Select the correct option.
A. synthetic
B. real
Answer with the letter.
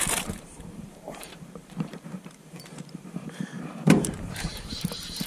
A